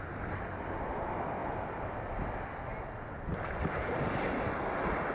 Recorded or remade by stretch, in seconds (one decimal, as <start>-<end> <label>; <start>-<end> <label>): 0.0-5.1 recorded